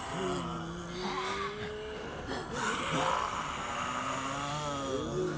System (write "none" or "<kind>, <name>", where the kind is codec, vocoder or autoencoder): none